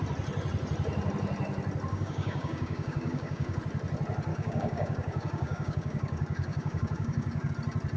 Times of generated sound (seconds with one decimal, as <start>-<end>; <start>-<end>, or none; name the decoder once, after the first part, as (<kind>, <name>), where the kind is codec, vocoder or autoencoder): 1.9-3.6 (codec, DAC); 4.3-7.5